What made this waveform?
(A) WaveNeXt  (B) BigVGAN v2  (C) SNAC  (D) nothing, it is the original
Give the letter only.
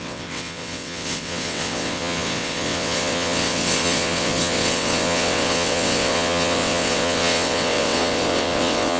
A